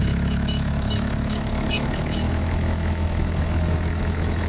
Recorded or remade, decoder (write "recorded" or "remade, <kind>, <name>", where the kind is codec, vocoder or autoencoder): remade, autoencoder, DAC-VAE